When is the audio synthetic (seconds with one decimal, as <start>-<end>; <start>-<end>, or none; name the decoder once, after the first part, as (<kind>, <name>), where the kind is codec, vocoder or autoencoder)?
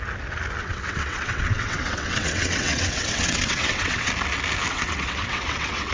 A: 0.6-4.1 (vocoder, WaveNeXt); 4.7-5.9